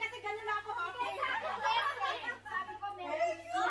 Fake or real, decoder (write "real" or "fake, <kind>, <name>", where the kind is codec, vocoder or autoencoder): real